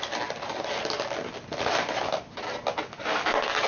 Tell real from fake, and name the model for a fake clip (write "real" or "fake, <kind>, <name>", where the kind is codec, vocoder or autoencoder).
real